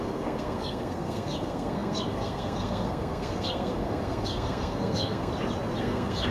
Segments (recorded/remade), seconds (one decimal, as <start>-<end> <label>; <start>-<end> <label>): 0.0-5.3 remade; 5.3-5.8 recorded; 5.8-6.3 remade